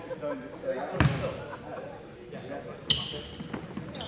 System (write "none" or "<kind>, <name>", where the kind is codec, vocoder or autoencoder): none